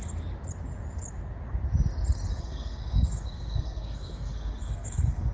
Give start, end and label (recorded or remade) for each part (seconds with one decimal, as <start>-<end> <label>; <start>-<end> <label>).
0.0-2.3 recorded; 2.3-5.3 remade